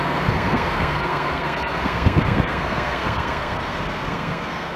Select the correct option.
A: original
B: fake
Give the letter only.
B